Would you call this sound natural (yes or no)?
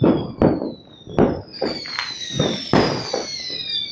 yes